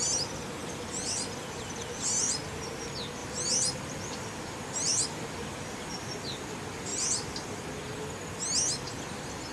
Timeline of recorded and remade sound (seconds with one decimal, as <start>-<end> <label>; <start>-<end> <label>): 0.0-0.6 recorded; 0.6-2.6 remade; 2.6-3.2 recorded; 3.2-6.1 remade; 6.1-6.9 recorded; 6.9-7.6 remade; 7.6-9.5 recorded